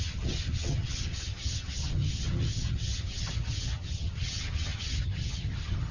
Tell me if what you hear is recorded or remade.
remade